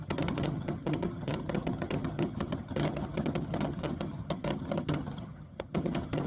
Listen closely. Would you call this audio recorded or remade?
remade